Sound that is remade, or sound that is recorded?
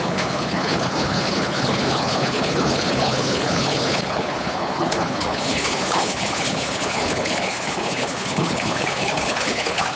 remade